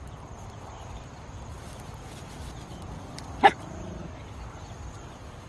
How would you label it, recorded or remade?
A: recorded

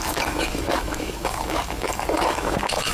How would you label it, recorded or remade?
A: remade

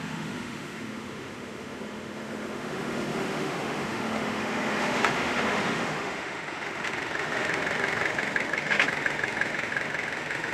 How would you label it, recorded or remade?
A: remade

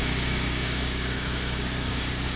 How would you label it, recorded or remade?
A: remade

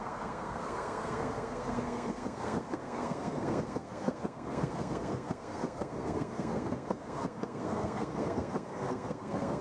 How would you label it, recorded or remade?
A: remade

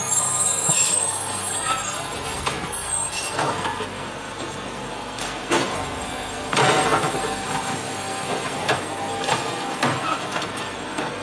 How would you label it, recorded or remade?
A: remade